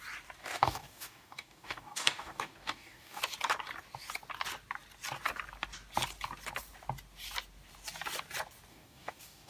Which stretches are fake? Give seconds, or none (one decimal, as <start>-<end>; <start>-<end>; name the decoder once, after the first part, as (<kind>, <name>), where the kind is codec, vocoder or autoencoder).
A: 0.4-3.2 (codec, DAC); 8.7-9.5